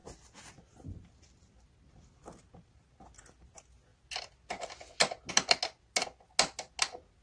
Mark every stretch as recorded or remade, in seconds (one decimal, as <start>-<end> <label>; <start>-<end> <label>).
0.0-7.2 recorded